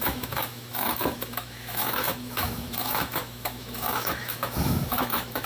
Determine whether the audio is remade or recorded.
remade